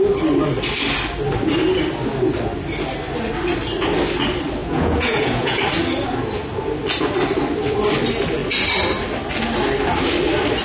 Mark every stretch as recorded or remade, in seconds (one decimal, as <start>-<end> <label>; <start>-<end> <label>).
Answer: 0.0-4.6 recorded; 4.6-5.5 remade; 5.5-10.6 recorded